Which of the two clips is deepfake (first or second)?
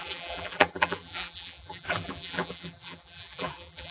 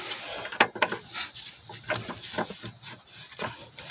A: first